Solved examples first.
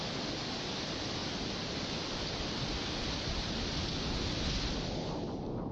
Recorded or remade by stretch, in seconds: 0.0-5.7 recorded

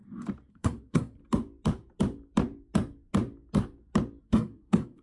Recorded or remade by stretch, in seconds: 0.0-0.5 recorded; 0.5-1.2 remade; 1.2-4.2 recorded; 4.2-5.0 remade

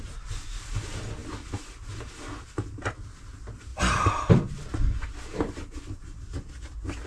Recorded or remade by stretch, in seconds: 0.0-7.1 recorded